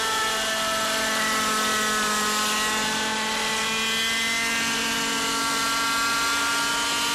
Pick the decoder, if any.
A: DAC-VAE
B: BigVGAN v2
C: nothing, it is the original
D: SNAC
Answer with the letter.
C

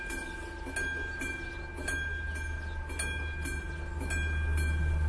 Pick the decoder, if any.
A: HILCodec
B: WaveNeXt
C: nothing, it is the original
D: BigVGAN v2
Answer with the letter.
C